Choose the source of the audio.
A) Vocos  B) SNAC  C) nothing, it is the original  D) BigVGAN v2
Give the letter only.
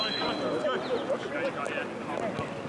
C